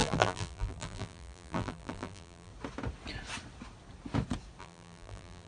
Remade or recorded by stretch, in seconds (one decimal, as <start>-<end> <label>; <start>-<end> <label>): 0.0-2.5 remade; 2.5-4.6 recorded; 4.6-5.5 remade